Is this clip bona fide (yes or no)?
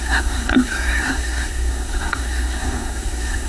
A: no